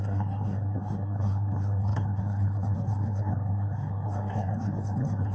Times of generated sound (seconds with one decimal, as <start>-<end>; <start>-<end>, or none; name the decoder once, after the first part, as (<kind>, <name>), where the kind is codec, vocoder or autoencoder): 0.0-5.3 (codec, SNAC)